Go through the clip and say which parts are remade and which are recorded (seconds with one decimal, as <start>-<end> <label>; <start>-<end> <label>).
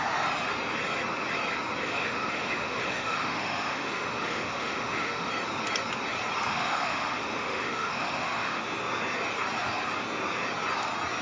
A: 0.0-1.8 recorded; 1.8-5.3 remade; 5.3-6.5 recorded; 6.5-8.6 remade; 8.6-11.2 recorded